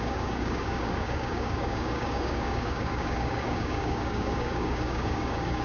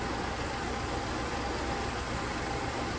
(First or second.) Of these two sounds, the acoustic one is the second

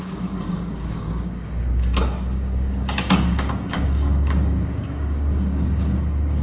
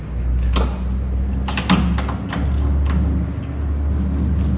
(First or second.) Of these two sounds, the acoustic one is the second